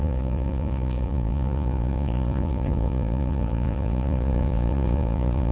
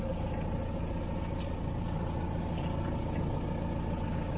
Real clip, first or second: second